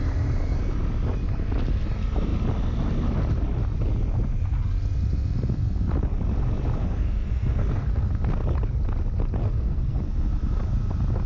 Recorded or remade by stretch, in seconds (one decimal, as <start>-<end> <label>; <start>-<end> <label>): 0.0-6.8 recorded; 6.8-8.1 remade; 8.1-9.4 recorded; 9.4-10.0 remade; 10.0-11.3 recorded